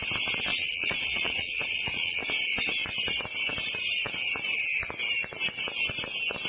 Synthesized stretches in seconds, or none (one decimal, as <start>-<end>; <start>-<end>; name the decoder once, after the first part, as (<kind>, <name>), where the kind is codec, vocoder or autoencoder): 0.5-2.2 (vocoder, Vocos)